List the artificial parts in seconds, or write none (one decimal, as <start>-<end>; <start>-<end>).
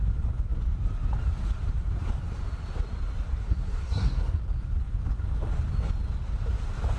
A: 3.4-4.4